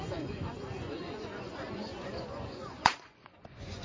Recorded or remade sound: remade